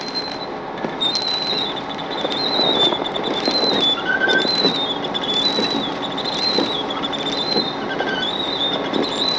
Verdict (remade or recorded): recorded